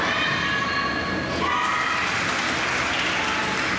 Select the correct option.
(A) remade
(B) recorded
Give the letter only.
B